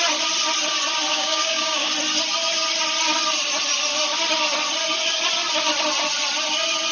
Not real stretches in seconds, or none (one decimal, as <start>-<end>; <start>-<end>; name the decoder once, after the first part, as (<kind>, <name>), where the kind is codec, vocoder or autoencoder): 1.1-1.9 (codec, DAC)